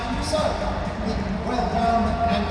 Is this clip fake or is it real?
real